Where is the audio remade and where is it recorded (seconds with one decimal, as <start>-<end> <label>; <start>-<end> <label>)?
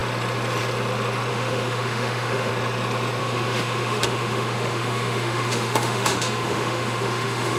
0.0-1.3 recorded; 1.3-2.5 remade; 2.5-3.2 recorded; 3.2-7.6 remade